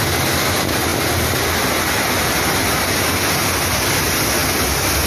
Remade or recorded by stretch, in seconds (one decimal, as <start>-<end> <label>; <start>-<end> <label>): 0.0-5.1 recorded